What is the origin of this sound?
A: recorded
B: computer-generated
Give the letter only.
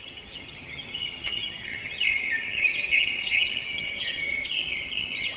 B